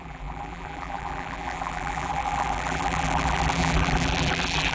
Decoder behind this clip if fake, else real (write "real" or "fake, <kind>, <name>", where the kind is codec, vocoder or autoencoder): fake, vocoder, BigVGAN v2